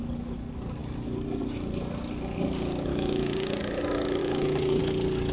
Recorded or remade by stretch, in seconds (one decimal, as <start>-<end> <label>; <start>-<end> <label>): 0.0-2.9 recorded; 2.9-3.6 remade; 3.6-4.2 recorded; 4.2-4.8 remade; 4.8-5.3 recorded